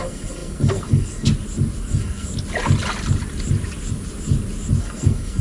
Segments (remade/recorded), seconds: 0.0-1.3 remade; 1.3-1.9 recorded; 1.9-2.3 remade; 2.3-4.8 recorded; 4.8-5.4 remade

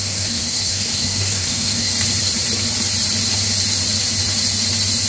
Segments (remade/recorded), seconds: 0.0-1.9 remade; 1.9-5.1 recorded

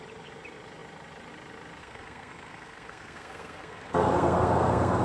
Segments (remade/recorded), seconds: 0.0-1.8 recorded; 1.8-5.0 remade

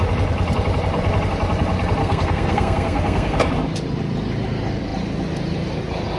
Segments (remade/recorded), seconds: 0.0-2.0 recorded; 2.0-3.5 remade; 3.5-6.2 recorded

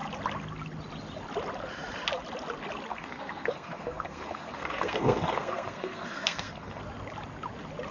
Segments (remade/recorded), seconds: 0.0-2.9 recorded; 2.9-6.8 remade; 6.8-7.9 recorded

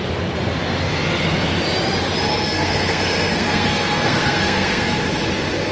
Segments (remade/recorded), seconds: 0.0-2.3 recorded; 2.3-5.0 remade; 5.0-5.7 recorded